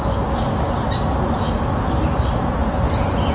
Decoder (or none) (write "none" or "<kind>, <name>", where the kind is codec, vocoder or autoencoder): none